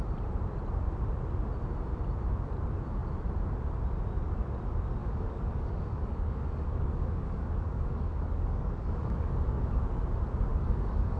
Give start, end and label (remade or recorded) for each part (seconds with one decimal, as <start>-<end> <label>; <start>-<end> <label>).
0.0-5.0 recorded; 5.0-9.8 remade; 9.8-10.5 recorded; 10.5-11.2 remade